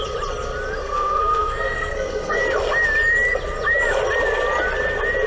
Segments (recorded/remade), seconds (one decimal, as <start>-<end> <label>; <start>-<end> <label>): 0.0-0.8 recorded; 0.8-2.4 remade; 2.4-5.3 recorded